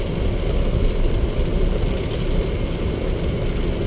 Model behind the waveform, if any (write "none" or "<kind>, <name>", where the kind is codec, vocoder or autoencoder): none